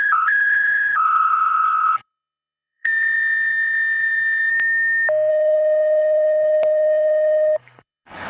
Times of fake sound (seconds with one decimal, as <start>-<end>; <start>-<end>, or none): 0.0-4.5; 5.3-8.3